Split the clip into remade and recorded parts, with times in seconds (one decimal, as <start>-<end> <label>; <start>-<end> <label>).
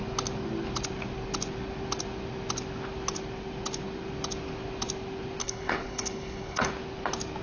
0.0-5.4 recorded; 5.4-6.7 remade; 6.7-7.4 recorded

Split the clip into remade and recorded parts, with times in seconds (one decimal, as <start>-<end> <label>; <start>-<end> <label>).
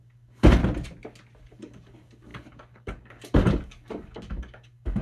0.0-0.6 remade; 0.6-1.4 recorded; 1.4-5.0 remade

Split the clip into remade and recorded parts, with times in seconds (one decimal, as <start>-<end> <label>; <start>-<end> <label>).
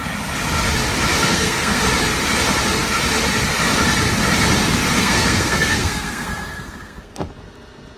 0.0-1.2 recorded; 1.2-1.8 remade; 1.8-5.0 recorded; 5.0-7.3 remade; 7.3-8.0 recorded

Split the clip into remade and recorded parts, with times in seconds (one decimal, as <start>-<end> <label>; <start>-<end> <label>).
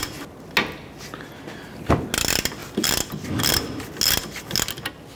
0.0-5.2 recorded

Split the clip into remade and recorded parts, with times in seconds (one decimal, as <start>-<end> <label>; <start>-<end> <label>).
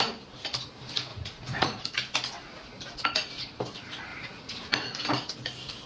0.0-1.1 recorded; 1.1-1.8 remade; 1.8-4.1 recorded; 4.1-5.0 remade; 5.0-5.9 recorded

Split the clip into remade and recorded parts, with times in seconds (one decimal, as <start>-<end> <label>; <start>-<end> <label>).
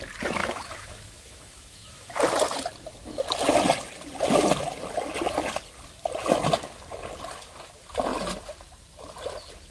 0.0-0.4 recorded; 0.4-2.2 remade; 2.2-9.7 recorded